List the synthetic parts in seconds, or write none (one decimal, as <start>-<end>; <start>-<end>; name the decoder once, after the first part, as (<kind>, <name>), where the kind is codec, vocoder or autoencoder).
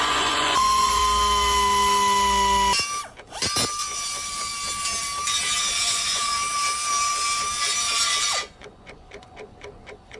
0.0-1.0 (vocoder, Vocos); 3.8-4.5; 5.8-6.3; 8.5-10.2